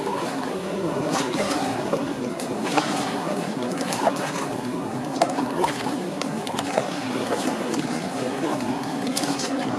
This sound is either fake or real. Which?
fake